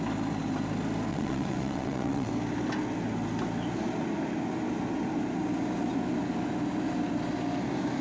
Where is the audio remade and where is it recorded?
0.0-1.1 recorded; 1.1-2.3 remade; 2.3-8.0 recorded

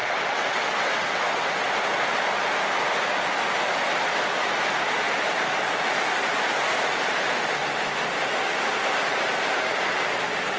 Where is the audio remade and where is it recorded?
0.0-1.5 remade; 1.5-10.6 recorded